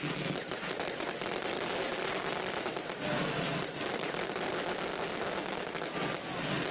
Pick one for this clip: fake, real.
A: real